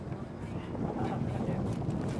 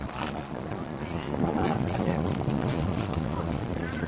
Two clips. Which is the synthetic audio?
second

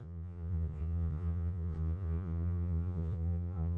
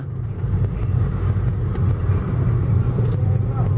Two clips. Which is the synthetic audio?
first